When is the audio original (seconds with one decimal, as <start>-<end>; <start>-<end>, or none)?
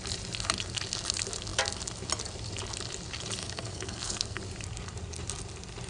0.0-3.4; 4.4-5.9